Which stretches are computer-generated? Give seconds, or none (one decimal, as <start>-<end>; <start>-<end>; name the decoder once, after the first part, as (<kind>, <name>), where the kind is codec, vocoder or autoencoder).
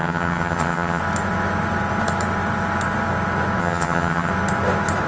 0.0-1.0 (vocoder, HiFi-GAN); 3.6-4.3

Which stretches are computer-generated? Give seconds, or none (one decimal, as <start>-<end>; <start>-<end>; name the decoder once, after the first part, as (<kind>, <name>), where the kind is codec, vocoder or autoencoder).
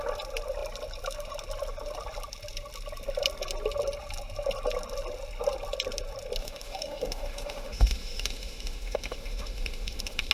6.4-10.3 (autoencoder, DAC-VAE)